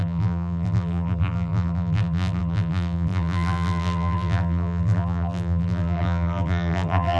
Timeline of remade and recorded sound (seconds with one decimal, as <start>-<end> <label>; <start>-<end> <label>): 0.0-7.2 remade